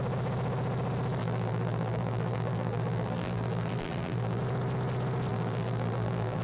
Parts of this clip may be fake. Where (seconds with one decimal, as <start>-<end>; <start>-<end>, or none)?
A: 1.2-4.4; 5.3-6.4